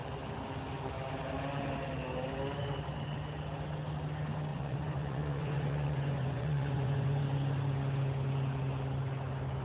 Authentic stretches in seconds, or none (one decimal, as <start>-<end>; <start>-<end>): 0.0-4.5; 7.2-9.6